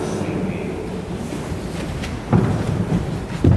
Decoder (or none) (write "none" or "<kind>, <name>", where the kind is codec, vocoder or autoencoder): none